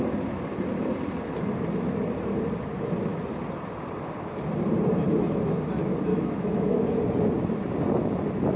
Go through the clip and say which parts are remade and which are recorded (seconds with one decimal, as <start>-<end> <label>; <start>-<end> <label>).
0.0-6.1 recorded; 6.1-6.8 remade; 6.8-8.6 recorded